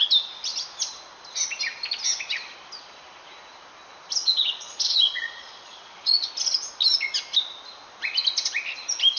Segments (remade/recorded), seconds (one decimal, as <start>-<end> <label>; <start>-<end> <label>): 0.0-4.2 recorded; 4.2-6.3 remade; 6.3-9.2 recorded